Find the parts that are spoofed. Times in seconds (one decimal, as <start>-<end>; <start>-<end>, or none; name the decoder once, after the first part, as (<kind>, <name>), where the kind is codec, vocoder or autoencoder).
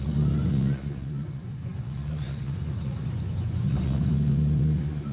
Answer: 0.0-5.1 (vocoder, Vocos)